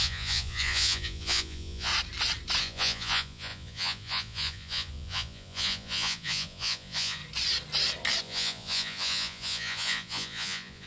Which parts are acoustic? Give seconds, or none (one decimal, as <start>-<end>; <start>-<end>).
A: 1.9-2.6; 7.2-8.2